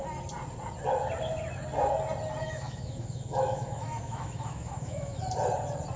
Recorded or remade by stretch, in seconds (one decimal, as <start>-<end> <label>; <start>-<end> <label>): 0.0-2.4 recorded; 2.4-5.2 remade; 5.2-6.0 recorded